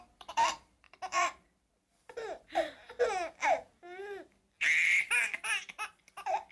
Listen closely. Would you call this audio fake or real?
fake